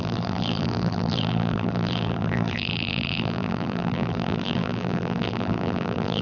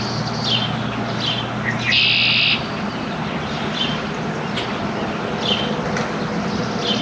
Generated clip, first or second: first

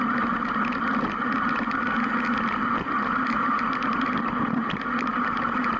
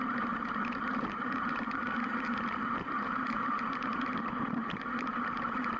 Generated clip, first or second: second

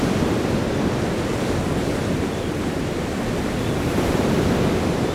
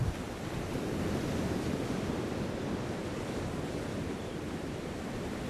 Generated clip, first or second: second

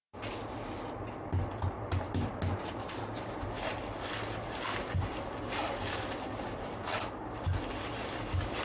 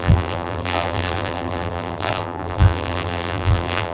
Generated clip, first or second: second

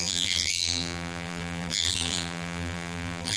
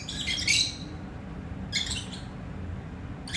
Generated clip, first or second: first